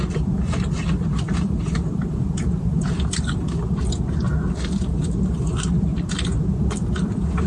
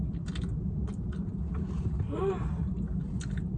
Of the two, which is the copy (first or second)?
first